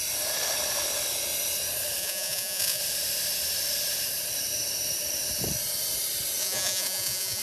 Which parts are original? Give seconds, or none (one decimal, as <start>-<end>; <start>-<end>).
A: 0.0-2.0; 2.8-6.4